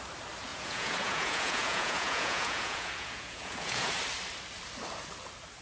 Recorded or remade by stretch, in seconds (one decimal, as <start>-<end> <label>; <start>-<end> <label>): 0.0-0.5 recorded; 0.5-3.9 remade; 3.9-5.6 recorded